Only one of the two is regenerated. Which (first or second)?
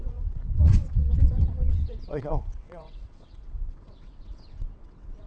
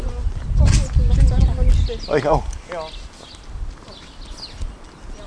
first